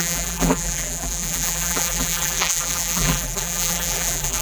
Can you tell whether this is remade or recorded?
remade